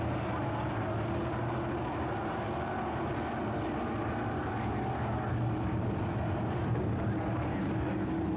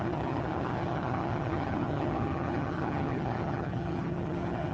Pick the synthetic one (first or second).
second